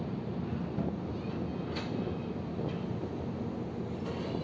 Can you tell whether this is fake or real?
real